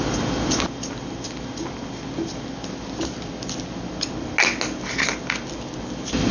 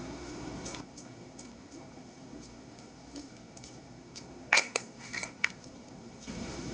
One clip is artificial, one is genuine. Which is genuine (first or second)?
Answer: first